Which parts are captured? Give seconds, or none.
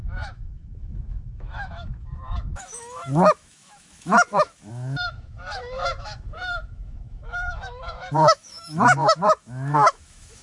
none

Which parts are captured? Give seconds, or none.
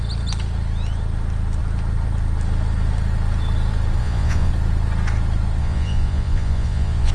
0.0-4.0; 4.5-5.6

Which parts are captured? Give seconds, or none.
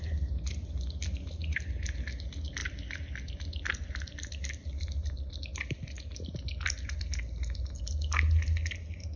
0.0-9.2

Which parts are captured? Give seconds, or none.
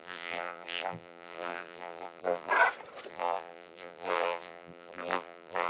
2.5-3.1